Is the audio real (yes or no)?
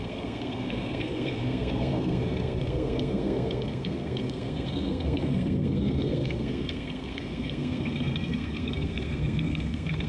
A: no